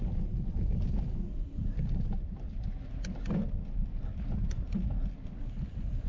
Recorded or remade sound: recorded